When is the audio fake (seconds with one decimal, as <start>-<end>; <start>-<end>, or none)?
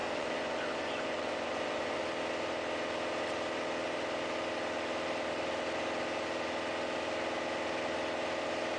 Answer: 0.0-2.0